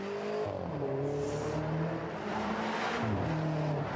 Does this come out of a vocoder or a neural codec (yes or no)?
no